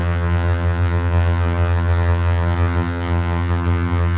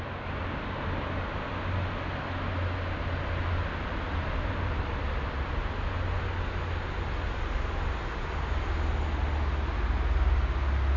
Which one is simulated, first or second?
first